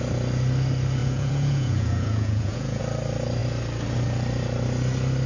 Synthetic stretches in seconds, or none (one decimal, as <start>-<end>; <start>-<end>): 1.0-2.8